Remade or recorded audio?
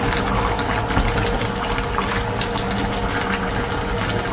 recorded